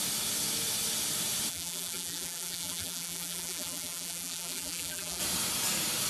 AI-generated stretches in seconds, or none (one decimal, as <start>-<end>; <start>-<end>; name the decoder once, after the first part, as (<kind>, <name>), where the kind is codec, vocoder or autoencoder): 1.5-5.2 (vocoder, BigVGAN v2)